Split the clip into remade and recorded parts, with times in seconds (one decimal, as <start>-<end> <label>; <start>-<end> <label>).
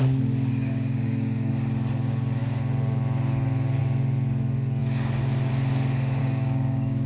0.0-0.5 recorded; 0.5-1.5 remade; 1.5-6.2 recorded; 6.2-7.1 remade